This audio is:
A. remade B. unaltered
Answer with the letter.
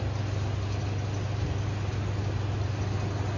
B